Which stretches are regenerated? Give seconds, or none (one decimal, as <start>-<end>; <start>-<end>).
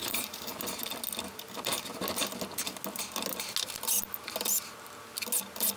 0.0-0.6